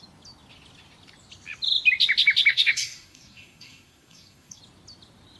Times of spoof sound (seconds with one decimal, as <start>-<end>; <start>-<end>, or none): 2.5-4.6